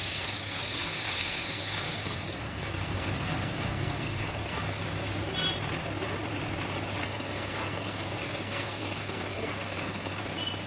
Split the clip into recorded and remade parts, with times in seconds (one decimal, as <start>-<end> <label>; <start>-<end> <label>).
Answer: 0.0-4.8 remade; 4.8-7.0 recorded; 7.0-10.2 remade; 10.2-10.7 recorded